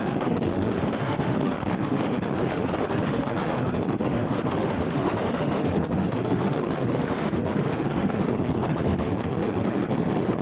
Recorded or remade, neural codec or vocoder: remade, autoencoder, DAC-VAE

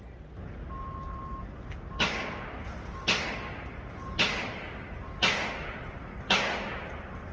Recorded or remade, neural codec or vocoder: recorded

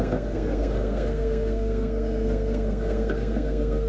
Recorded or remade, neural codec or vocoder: remade, codec, SNAC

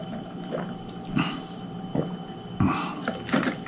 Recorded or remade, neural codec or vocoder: recorded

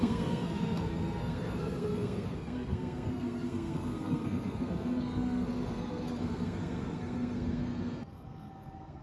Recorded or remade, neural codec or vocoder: remade, codec, SNAC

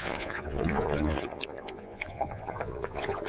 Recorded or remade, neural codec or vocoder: remade, vocoder, Vocos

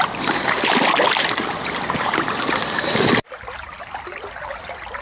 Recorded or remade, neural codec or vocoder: recorded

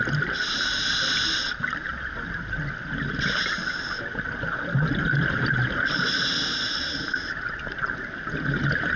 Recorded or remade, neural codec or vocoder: recorded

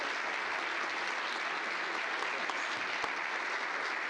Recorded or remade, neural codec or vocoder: recorded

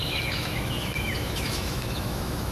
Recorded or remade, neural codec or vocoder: remade, autoencoder, DAC-VAE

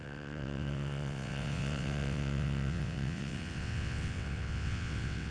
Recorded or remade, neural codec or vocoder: remade, vocoder, WaveNeXt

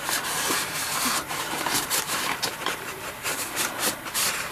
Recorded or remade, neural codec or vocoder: remade, vocoder, BigVGAN v2